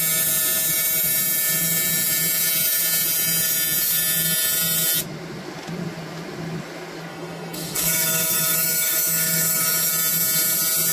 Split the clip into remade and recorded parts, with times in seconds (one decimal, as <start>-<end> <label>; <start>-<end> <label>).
0.0-7.1 recorded; 7.1-9.9 remade; 9.9-10.9 recorded